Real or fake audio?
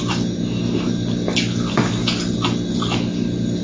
real